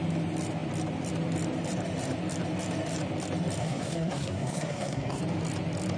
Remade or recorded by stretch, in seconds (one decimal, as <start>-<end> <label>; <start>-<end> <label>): 0.0-3.6 recorded; 3.6-5.2 remade; 5.2-6.0 recorded